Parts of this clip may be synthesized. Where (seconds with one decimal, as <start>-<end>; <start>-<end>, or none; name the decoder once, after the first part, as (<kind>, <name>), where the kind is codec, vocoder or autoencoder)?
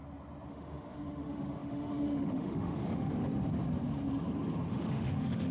0.5-3.3 (autoencoder, DAC-VAE); 4.7-5.5